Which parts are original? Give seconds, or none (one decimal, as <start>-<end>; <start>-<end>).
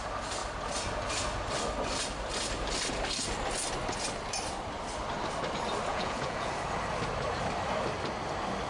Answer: 0.0-5.9; 6.5-8.7